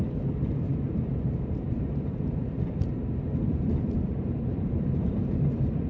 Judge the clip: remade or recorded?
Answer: remade